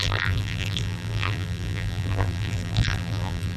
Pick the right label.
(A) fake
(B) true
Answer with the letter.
A